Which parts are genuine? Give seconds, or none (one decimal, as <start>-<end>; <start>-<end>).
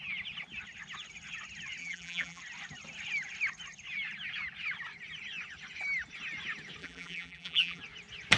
0.0-1.8; 2.4-6.8; 7.8-8.4